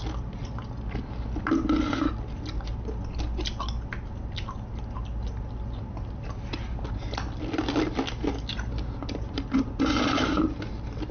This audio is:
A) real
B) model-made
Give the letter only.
A